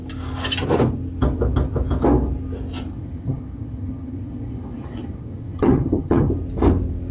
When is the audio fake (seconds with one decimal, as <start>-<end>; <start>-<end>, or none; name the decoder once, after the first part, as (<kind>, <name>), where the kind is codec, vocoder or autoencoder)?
2.9-6.3 (vocoder, HiFi-GAN)